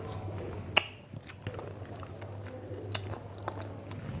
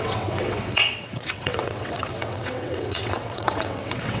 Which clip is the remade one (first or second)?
second